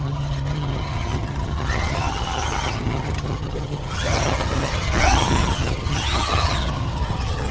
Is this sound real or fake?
fake